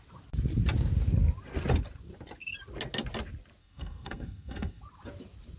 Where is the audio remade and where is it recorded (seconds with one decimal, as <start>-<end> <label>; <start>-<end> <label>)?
0.0-3.6 recorded; 3.6-4.8 remade; 4.8-5.6 recorded